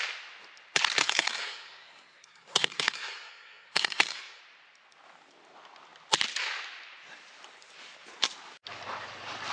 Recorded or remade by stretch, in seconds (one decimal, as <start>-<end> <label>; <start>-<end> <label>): 0.0-1.0 recorded; 1.0-4.4 remade; 4.4-9.5 recorded